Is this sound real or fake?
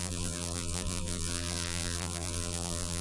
fake